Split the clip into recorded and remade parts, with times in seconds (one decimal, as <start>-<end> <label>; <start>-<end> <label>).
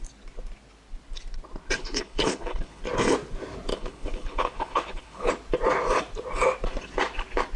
0.0-1.8 recorded; 1.8-2.8 remade; 2.8-3.7 recorded; 3.7-5.3 remade; 5.3-7.6 recorded